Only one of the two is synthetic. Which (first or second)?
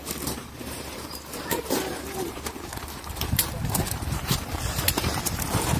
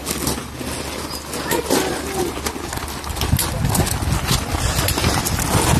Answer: first